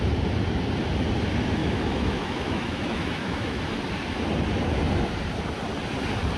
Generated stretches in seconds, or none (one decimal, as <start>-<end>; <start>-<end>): 1.6-3.6